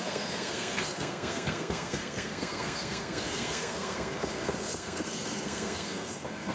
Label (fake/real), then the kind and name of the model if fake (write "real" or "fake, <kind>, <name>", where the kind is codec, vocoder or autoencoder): fake, codec, SNAC